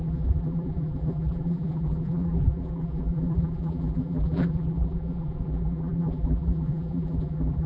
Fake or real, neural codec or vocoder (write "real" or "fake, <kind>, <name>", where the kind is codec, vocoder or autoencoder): fake, vocoder, BigVGAN v2